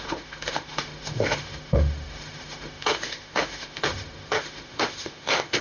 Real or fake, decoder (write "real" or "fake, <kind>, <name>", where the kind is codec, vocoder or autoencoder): fake, autoencoder, DAC-VAE